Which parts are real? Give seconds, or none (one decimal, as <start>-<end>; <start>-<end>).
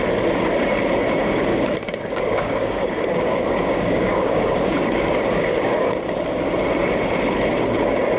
0.0-1.5; 5.9-8.2